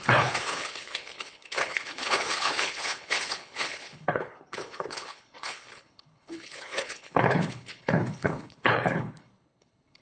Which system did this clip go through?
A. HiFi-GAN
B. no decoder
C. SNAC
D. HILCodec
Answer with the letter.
D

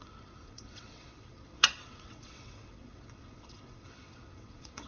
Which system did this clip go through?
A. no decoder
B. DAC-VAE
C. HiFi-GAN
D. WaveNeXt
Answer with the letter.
D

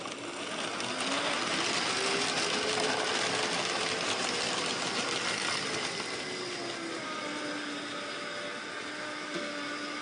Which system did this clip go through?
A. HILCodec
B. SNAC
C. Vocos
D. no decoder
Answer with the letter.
D